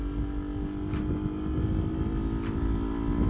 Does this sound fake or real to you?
real